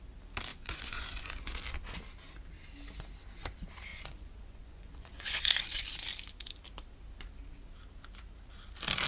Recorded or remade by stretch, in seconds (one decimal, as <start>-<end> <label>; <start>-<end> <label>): 0.0-0.5 recorded; 0.5-1.6 remade; 1.6-3.9 recorded; 3.9-5.8 remade; 5.8-9.1 recorded